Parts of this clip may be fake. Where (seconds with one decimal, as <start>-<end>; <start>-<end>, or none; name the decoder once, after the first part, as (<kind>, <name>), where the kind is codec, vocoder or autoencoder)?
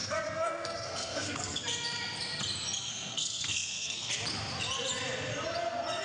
0.0-1.6 (codec, SNAC); 2.9-4.1